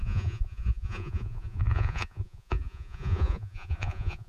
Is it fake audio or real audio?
fake